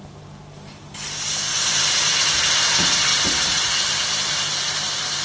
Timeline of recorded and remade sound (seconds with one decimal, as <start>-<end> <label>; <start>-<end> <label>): 0.0-5.2 recorded